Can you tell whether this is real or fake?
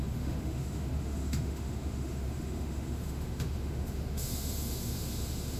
fake